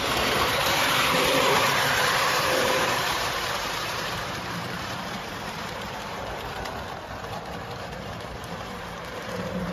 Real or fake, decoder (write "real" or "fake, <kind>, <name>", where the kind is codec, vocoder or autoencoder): fake, vocoder, BigVGAN v2